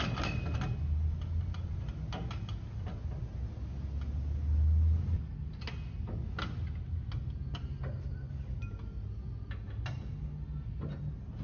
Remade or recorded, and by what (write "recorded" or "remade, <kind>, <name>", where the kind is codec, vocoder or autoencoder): recorded